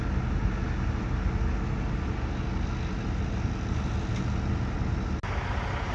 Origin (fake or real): real